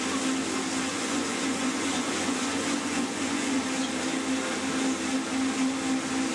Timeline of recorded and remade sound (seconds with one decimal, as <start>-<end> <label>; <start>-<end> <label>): 0.0-0.9 recorded; 0.9-3.6 remade; 3.6-6.3 recorded